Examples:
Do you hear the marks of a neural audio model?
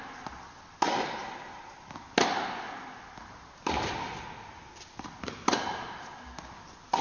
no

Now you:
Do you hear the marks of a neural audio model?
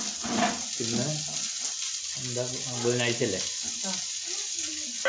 no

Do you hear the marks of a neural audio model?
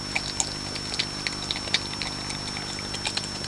no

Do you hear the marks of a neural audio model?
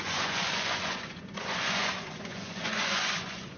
yes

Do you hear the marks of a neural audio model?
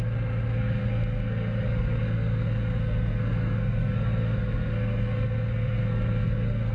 yes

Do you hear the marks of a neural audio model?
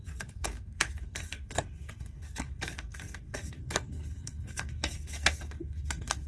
yes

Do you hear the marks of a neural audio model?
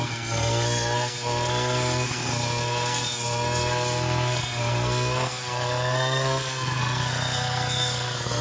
yes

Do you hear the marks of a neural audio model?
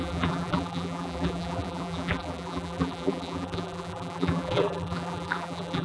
yes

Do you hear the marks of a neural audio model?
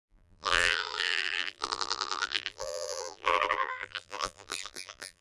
yes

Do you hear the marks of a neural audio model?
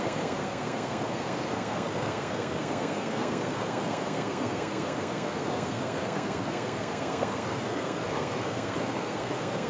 yes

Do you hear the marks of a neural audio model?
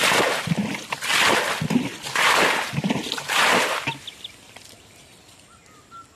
no